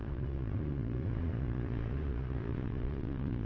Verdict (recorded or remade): remade